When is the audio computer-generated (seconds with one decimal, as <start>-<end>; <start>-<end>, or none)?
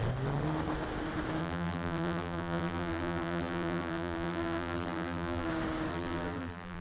1.4-5.5; 5.9-6.8